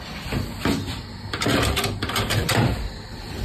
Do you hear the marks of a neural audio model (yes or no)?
no